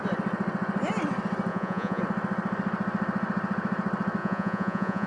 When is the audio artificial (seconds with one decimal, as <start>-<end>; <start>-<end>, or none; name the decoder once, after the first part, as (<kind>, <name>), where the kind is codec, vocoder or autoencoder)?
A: 1.5-2.0 (vocoder, Vocos); 4.2-5.1

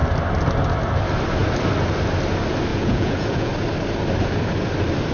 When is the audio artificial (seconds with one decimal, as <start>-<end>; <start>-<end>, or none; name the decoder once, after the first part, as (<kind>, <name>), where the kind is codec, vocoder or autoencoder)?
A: 2.7-3.5 (vocoder, Vocos)

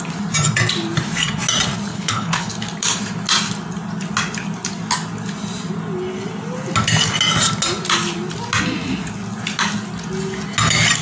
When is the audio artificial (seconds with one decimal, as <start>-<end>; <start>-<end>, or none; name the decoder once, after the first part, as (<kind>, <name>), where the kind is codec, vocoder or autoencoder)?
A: 1.9-2.5 (codec, HILCodec)

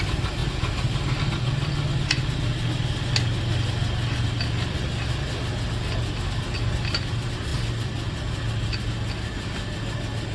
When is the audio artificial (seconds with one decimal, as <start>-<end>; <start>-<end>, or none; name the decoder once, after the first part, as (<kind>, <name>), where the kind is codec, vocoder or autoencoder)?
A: 7.5-8.4 (vocoder, BigVGAN v2)

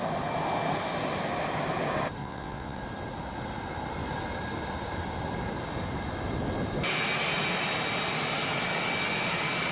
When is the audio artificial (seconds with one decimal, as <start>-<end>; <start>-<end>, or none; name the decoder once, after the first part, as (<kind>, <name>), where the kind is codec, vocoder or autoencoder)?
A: 2.2-2.8 (vocoder, WaveNeXt)

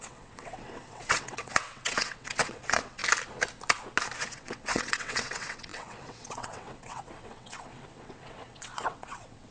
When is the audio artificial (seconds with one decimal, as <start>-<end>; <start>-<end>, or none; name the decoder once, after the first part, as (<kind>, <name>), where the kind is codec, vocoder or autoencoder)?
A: 0.0-3.0 (vocoder, WaveNeXt); 4.2-9.5